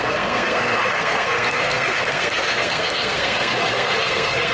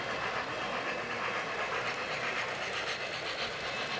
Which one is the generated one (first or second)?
first